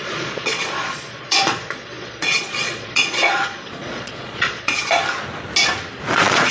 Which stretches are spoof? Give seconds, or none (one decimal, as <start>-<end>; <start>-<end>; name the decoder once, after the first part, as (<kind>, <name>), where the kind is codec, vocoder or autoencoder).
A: 0.0-5.0 (vocoder, Vocos); 6.1-6.5